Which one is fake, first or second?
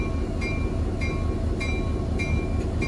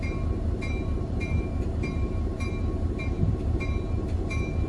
second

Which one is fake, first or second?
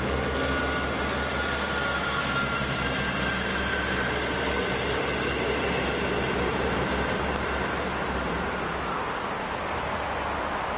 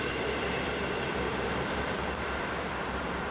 second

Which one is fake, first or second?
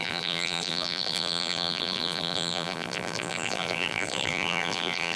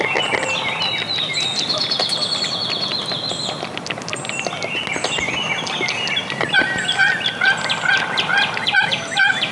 first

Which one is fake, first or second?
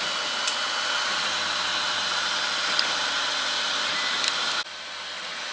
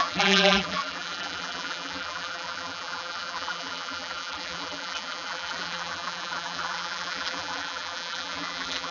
second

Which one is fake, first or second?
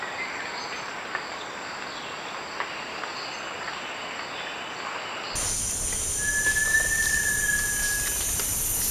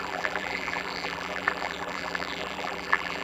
second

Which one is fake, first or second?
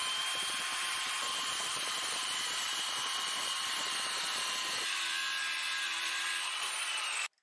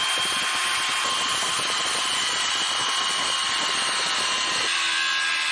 first